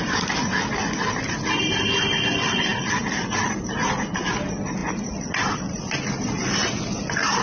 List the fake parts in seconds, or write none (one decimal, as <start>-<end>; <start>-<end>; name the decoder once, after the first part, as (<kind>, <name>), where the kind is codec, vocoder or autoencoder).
none